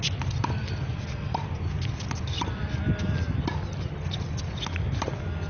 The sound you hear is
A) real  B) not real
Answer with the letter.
A